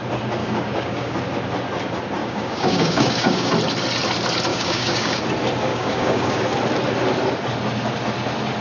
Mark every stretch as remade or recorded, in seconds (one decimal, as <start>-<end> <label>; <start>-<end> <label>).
0.0-0.4 recorded; 0.4-1.2 remade; 1.2-2.2 recorded; 2.2-3.5 remade; 3.5-4.5 recorded; 4.5-5.2 remade; 5.2-5.7 recorded; 5.7-6.4 remade; 6.4-8.6 recorded